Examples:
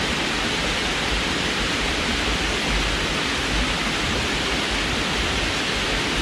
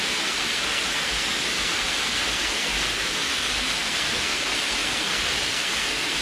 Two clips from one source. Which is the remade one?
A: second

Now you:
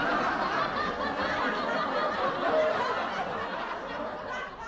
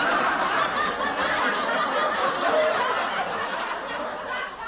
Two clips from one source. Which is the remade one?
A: second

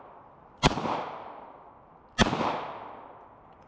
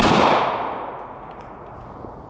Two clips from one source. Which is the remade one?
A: second